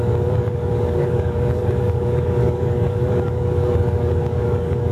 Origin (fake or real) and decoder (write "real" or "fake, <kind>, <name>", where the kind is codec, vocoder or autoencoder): fake, codec, DAC